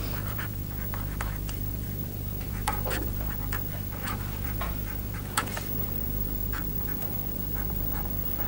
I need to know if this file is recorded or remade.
remade